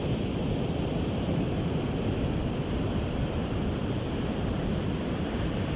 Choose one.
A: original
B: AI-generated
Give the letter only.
B